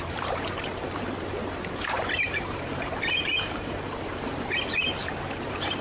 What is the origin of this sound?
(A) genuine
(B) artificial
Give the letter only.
B